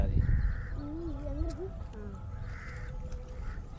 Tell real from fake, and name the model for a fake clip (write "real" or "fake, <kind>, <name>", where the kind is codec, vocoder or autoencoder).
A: real